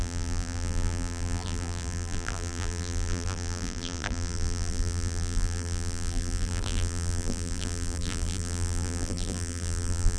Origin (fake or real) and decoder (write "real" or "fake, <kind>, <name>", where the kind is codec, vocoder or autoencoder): fake, vocoder, BigVGAN v2